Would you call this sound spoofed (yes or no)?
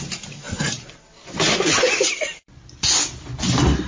no